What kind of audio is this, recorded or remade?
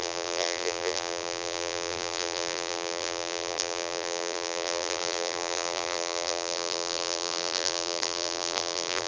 remade